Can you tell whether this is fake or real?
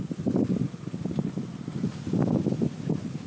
real